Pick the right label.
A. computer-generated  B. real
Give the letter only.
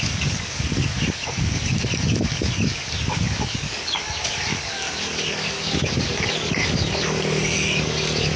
A